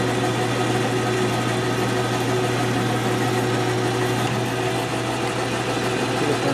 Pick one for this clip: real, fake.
real